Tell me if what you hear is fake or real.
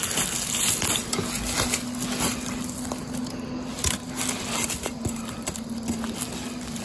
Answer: real